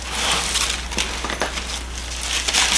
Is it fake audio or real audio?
real